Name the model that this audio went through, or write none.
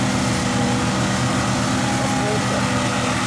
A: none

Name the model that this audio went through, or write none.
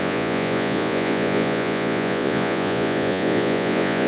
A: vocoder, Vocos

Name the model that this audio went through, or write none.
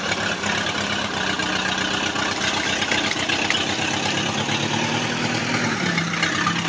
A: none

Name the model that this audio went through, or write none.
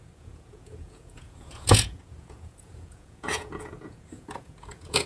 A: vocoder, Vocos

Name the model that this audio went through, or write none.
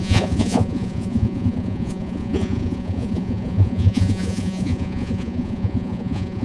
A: vocoder, Vocos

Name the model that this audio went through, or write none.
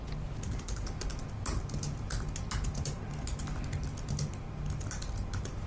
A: none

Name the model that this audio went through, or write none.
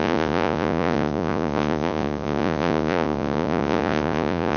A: vocoder, Vocos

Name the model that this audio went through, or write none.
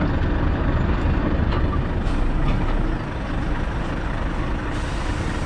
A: none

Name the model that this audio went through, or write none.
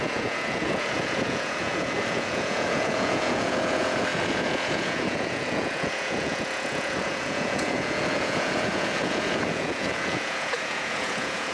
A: vocoder, Vocos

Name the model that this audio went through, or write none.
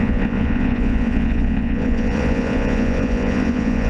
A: vocoder, Vocos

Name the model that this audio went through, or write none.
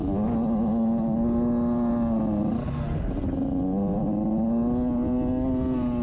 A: none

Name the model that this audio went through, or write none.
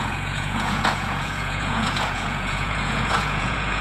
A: vocoder, Vocos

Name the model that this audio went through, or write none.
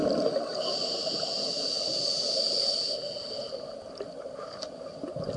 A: none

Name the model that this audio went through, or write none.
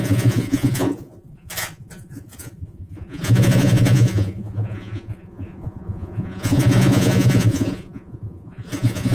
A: vocoder, Vocos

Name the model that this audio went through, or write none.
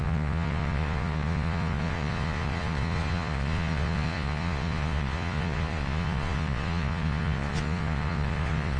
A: vocoder, Vocos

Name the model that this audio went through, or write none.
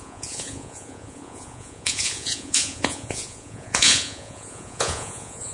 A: vocoder, Vocos